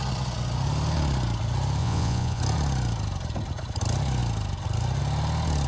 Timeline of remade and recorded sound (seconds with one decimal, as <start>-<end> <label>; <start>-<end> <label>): 0.0-1.8 recorded; 1.8-2.4 remade; 2.4-5.7 recorded